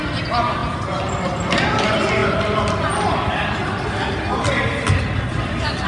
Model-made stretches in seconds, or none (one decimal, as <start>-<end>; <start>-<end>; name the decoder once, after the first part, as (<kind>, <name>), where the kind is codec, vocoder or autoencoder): none